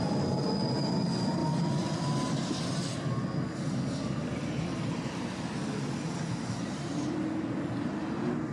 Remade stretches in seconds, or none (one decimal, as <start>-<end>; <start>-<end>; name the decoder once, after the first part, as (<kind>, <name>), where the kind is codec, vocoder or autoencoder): none